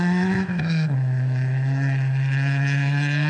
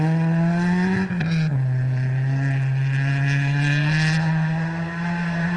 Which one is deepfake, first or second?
first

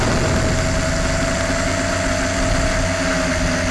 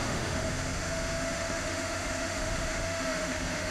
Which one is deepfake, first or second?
second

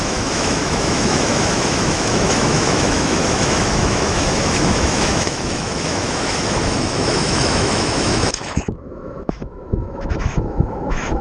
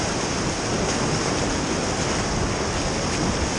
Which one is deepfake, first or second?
first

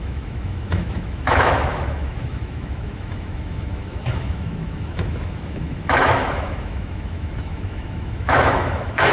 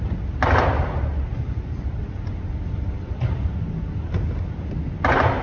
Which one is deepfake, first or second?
first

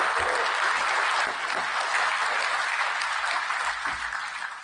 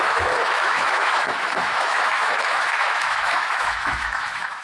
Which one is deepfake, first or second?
second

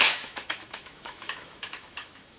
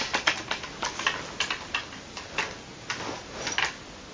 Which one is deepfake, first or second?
first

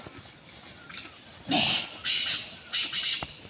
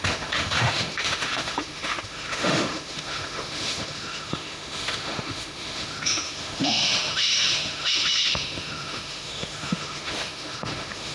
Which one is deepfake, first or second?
second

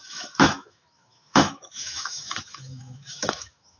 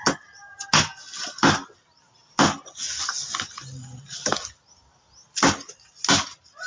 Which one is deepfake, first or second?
first